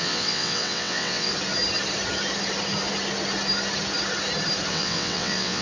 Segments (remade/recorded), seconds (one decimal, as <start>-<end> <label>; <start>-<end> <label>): 0.0-1.3 remade; 1.3-4.7 recorded; 4.7-5.6 remade